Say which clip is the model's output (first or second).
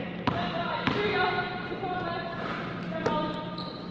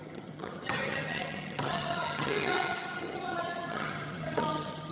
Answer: second